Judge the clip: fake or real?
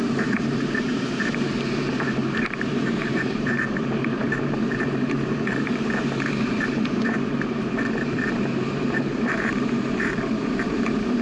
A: fake